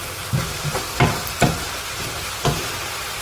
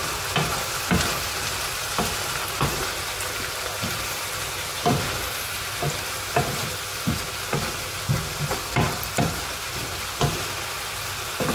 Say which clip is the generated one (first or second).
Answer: first